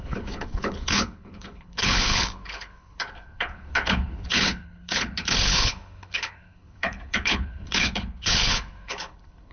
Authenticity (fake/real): fake